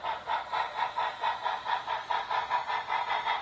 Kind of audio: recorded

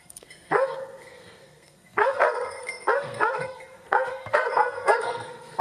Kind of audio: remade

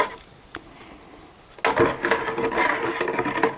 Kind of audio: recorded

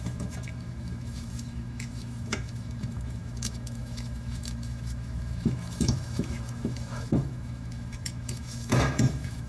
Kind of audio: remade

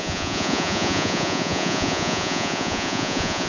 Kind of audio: remade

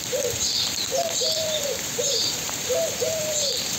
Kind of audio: remade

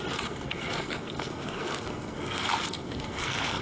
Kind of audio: remade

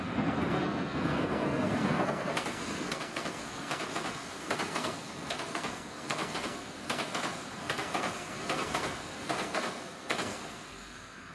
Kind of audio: remade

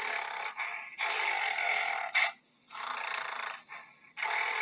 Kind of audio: recorded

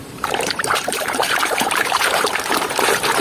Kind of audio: remade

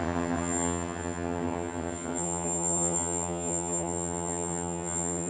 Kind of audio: remade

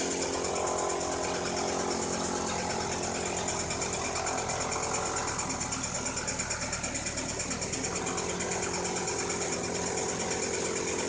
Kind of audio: recorded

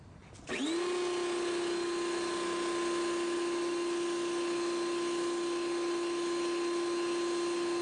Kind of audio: recorded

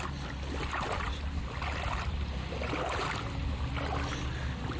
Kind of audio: recorded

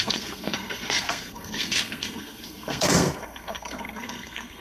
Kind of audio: remade